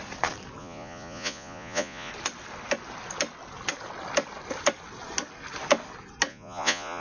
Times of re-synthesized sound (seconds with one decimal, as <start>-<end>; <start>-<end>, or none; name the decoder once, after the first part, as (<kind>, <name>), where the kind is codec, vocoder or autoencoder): 0.6-2.1 (vocoder, Vocos); 6.3-7.0